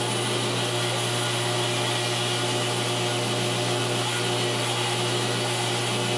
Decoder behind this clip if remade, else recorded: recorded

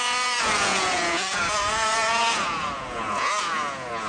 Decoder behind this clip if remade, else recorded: remade, vocoder, Vocos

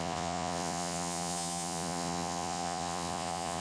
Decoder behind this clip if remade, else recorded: remade, vocoder, Vocos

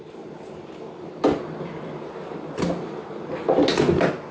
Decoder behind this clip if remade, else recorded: recorded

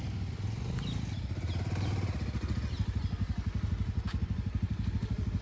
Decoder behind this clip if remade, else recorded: recorded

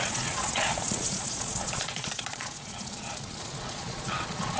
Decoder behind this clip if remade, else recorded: remade, vocoder, Vocos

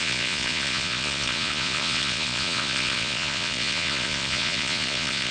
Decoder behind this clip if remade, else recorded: remade, vocoder, Vocos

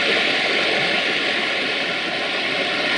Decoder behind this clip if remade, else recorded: recorded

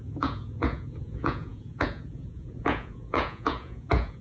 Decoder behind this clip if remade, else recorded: remade, vocoder, Vocos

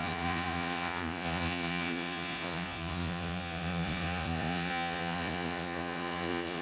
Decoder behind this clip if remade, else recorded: remade, vocoder, Vocos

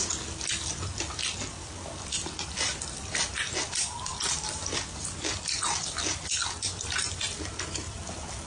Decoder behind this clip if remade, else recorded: recorded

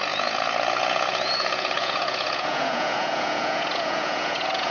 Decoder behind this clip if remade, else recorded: remade, vocoder, Vocos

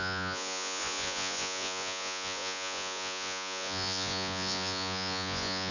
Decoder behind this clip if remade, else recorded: remade, vocoder, Vocos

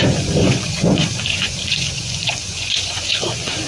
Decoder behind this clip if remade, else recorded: remade, vocoder, Vocos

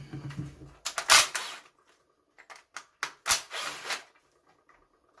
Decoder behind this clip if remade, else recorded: recorded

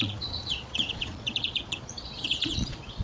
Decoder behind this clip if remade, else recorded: remade, vocoder, Vocos